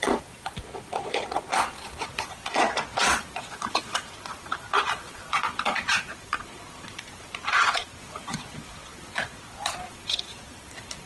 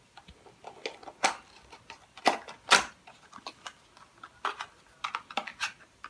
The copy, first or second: first